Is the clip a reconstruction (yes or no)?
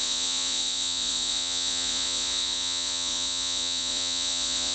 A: yes